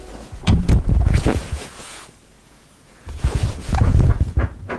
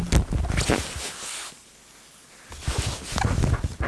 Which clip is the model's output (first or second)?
first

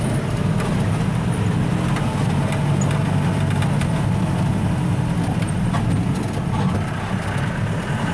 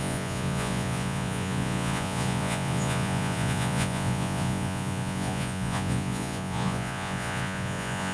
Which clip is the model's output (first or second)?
second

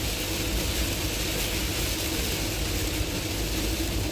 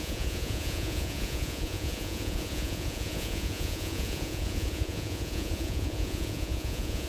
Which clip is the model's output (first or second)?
second